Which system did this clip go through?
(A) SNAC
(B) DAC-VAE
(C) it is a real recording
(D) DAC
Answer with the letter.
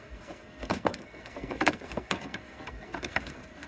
A